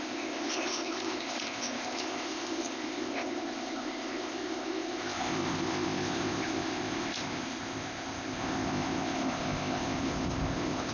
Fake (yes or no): yes